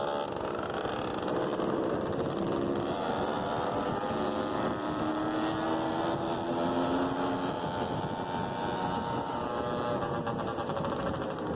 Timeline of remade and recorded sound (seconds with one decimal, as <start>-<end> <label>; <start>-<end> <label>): 0.0-11.6 recorded